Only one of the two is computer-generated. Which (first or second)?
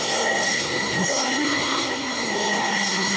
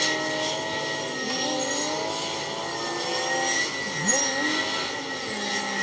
first